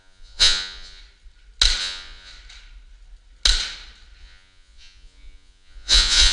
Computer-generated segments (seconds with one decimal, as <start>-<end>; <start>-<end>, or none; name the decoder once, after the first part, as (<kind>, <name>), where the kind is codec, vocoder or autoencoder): 0.0-1.0 (vocoder, Vocos); 1.8-2.3; 4.2-6.3